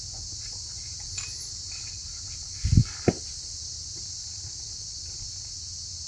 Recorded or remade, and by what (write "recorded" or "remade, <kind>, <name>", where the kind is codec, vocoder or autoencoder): recorded